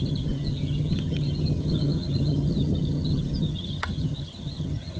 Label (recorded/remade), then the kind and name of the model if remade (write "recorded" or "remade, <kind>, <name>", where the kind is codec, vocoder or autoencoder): remade, vocoder, HiFi-GAN